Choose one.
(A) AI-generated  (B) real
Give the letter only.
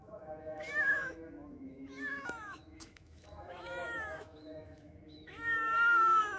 A